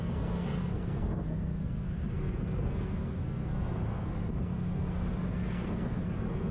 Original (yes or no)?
no